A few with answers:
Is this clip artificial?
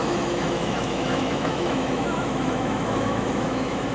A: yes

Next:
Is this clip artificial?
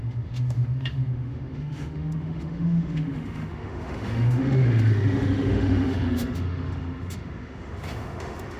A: yes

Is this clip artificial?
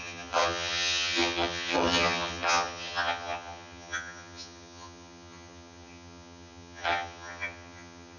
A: yes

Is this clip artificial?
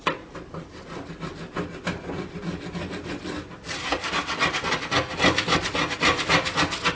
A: no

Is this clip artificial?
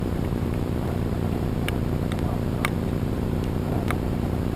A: yes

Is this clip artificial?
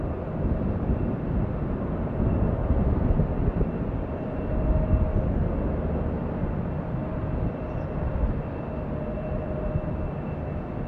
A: no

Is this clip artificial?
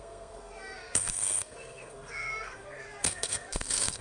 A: yes